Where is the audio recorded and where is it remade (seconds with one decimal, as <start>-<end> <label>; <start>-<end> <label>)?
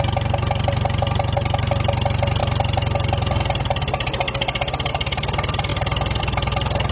0.0-6.9 recorded